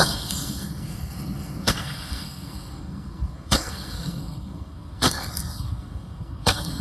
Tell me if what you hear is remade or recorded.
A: remade